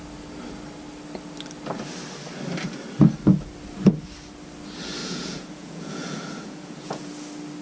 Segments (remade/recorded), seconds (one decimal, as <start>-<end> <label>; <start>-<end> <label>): 0.0-5.0 recorded; 5.0-7.1 remade; 7.1-7.6 recorded